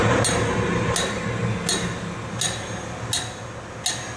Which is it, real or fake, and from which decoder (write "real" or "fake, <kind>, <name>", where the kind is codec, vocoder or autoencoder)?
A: real